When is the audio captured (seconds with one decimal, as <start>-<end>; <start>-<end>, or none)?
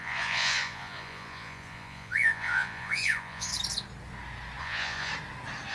3.5-4.6; 5.1-5.7